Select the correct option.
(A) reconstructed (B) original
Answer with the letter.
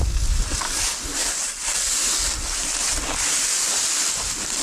B